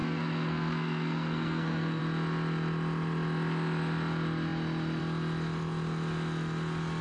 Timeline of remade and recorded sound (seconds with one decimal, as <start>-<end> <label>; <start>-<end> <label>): 0.0-2.0 remade; 2.0-7.0 recorded